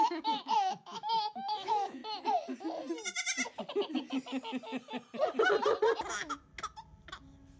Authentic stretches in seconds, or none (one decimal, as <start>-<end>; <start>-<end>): 2.0-6.1; 6.5-7.6